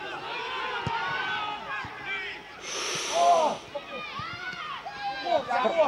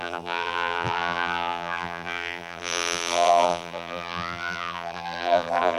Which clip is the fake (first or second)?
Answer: second